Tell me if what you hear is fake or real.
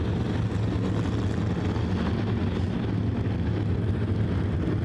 real